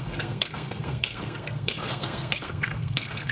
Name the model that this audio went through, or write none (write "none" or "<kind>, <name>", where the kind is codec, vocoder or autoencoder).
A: codec, SNAC